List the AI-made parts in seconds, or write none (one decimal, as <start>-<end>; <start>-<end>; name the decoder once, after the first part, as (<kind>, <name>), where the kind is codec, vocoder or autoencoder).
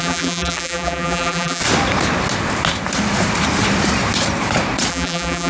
0.0-1.6 (vocoder, BigVGAN v2); 4.9-5.5